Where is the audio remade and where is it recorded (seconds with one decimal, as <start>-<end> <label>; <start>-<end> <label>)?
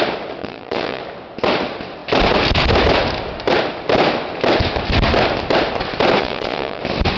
0.0-0.4 recorded; 0.4-1.0 remade; 1.0-6.2 recorded; 6.2-6.8 remade; 6.8-7.2 recorded